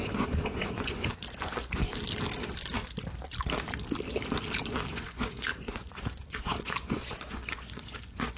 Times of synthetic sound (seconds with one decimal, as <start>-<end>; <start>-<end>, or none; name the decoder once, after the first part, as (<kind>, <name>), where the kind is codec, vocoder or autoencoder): 0.0-1.8 (vocoder, Vocos); 4.9-8.4